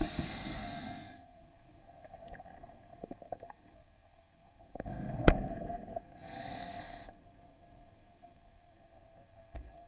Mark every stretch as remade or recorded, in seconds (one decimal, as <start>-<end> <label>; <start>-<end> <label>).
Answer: 0.0-9.9 remade